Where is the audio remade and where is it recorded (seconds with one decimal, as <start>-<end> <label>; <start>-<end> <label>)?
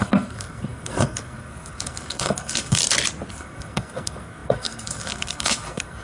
0.0-2.8 remade; 2.8-3.3 recorded; 3.3-6.0 remade